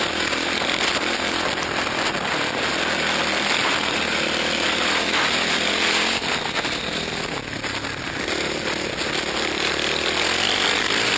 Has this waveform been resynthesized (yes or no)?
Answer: no